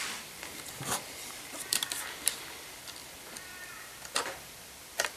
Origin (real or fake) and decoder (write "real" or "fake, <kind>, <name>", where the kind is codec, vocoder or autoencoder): fake, vocoder, BigVGAN v2